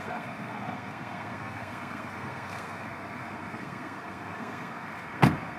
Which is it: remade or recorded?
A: remade